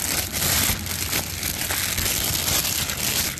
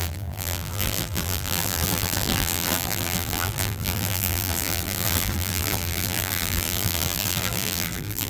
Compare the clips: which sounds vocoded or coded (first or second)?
second